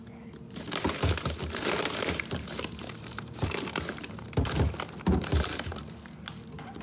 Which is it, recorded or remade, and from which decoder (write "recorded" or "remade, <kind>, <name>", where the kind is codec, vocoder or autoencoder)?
remade, vocoder, BigVGAN v2